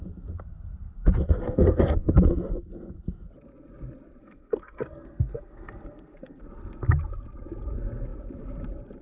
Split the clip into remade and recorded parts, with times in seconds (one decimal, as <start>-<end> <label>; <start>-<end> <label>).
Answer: 0.0-1.4 recorded; 1.4-2.1 remade; 2.1-4.2 recorded; 4.2-6.4 remade; 6.4-9.0 recorded